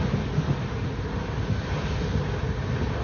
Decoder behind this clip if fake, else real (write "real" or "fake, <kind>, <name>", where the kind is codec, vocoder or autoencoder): real